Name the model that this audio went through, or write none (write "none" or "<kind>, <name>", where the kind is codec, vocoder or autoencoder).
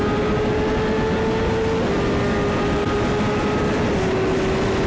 none